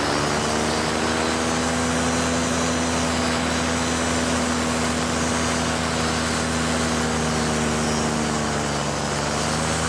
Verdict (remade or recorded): recorded